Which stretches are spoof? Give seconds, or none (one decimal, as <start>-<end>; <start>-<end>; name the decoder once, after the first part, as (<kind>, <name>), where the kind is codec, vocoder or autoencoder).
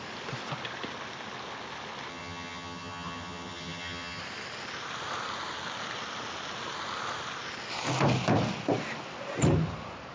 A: 2.1-4.2 (vocoder, HiFi-GAN)